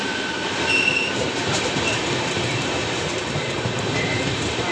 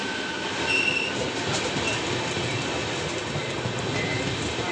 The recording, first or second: second